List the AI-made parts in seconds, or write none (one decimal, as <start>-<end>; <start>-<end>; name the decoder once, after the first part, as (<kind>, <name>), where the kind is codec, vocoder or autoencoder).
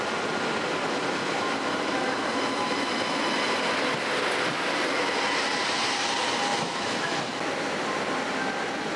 6.5-7.2 (autoencoder, DAC-VAE)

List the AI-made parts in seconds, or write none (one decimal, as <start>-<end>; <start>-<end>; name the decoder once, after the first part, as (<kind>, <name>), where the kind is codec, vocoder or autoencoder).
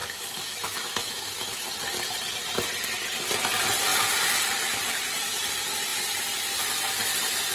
0.0-1.7 (autoencoder, DAC-VAE)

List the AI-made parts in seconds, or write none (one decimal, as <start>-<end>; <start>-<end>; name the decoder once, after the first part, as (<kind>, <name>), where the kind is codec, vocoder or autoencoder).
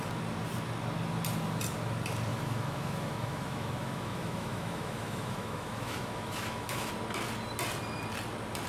2.3-6.9 (autoencoder, DAC-VAE)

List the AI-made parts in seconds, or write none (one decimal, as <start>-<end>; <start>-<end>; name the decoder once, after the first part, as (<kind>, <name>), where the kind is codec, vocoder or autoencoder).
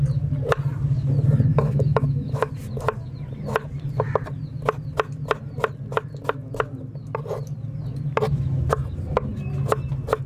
1.5-2.5 (autoencoder, DAC-VAE)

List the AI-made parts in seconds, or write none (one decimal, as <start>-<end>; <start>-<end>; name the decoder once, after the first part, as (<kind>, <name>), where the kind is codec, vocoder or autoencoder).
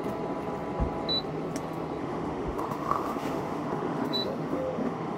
2.0-5.2 (autoencoder, DAC-VAE)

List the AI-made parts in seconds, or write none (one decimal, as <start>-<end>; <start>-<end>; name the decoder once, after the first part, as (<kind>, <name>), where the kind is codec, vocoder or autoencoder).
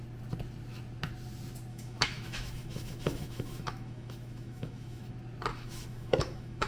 1.7-5.1 (autoencoder, DAC-VAE); 5.5-6.7